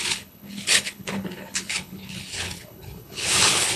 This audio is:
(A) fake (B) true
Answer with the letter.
A